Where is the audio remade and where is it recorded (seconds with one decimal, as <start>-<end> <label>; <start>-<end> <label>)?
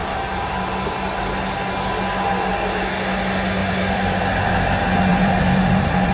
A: 0.0-3.6 recorded; 3.6-4.2 remade; 4.2-5.1 recorded; 5.1-6.1 remade